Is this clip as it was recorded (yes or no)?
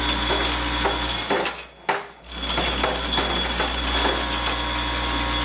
yes